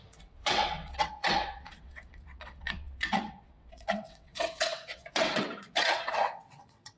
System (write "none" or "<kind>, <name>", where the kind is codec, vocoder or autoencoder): vocoder, WaveNeXt